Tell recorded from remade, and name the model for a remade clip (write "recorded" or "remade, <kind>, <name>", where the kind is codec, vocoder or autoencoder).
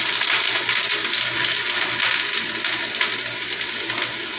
recorded